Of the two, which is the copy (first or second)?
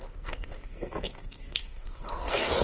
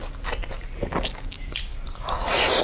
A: first